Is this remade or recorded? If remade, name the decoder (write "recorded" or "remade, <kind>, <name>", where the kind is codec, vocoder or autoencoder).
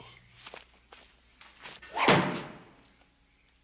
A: recorded